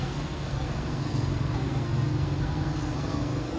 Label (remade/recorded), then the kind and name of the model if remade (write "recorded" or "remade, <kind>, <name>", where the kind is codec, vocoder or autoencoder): remade, codec, SNAC